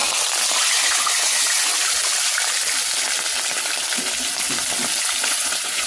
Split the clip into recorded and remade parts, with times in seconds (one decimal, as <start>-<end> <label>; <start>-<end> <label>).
0.0-0.6 recorded; 0.6-1.7 remade; 1.7-5.2 recorded; 5.2-5.9 remade